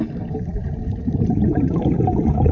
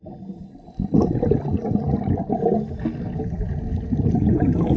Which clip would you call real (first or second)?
second